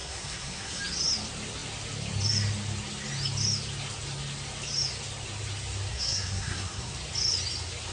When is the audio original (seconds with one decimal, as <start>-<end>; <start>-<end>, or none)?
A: 0.8-5.9; 6.9-7.9